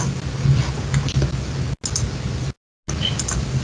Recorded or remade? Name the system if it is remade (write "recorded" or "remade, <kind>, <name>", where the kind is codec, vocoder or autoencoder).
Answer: recorded